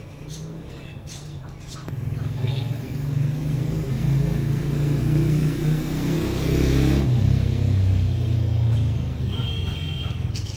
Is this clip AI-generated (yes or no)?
yes